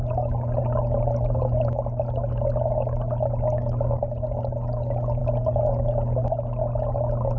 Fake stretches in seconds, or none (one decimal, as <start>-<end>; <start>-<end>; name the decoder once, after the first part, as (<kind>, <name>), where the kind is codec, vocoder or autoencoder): none